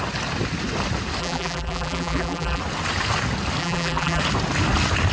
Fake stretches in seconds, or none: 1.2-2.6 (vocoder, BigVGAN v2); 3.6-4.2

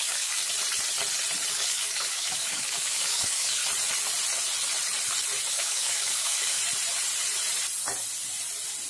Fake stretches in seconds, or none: 0.0-0.4 (codec, DAC); 1.5-3.6; 5.5-6.6